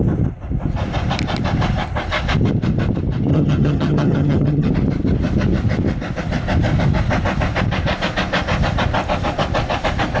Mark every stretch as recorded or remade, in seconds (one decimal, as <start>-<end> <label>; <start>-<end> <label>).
0.0-3.3 recorded; 3.3-4.7 remade; 4.7-10.2 recorded